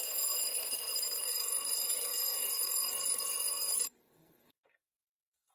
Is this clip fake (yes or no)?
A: yes